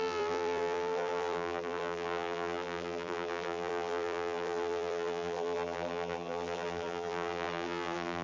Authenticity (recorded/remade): remade